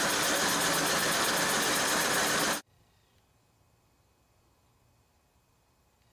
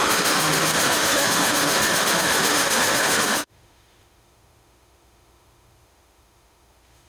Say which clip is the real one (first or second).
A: first